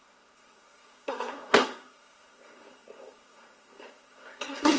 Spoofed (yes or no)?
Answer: yes